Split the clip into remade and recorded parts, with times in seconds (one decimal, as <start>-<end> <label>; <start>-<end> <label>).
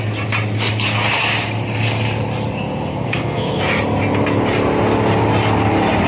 0.0-2.9 recorded; 2.9-3.6 remade; 3.6-6.1 recorded